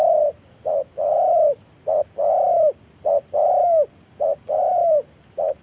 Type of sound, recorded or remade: recorded